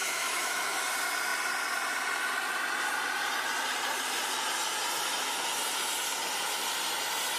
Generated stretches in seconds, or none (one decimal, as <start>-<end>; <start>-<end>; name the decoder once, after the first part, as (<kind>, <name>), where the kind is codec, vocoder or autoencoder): 0.0-0.8 (autoencoder, DAC-VAE)